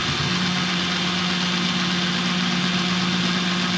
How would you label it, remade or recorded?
recorded